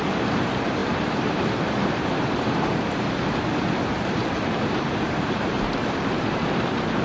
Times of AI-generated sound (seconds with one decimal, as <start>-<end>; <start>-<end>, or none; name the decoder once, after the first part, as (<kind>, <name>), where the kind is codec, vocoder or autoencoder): 0.0-7.0 (vocoder, BigVGAN v2)